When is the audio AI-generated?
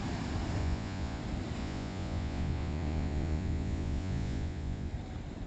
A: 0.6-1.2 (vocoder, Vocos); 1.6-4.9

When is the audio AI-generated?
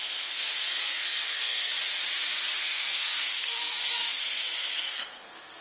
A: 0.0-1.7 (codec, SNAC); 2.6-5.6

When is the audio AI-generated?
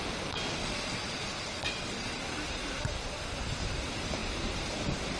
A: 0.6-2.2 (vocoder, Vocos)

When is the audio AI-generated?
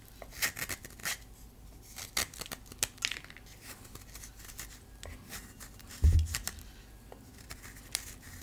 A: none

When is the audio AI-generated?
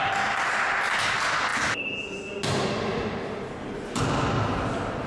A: none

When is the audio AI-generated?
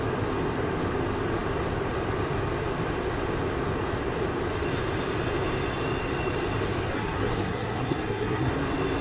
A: 6.9-8.5 (codec, SNAC)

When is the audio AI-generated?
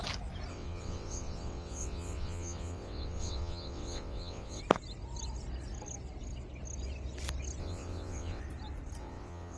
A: 0.5-4.6 (vocoder, WaveNeXt); 7.6-8.4; 9.0-9.6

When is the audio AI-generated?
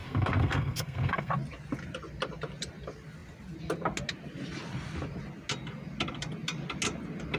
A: 0.0-1.3 (codec, SNAC)